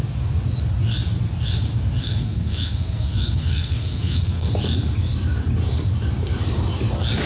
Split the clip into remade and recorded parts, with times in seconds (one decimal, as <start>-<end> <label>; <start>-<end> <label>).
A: 0.0-2.0 recorded; 2.0-4.5 remade; 4.5-7.3 recorded